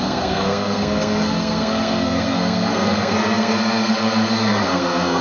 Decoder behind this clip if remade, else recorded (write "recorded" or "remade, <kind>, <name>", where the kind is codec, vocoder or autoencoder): remade, codec, SNAC